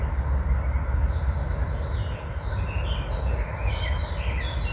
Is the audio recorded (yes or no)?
yes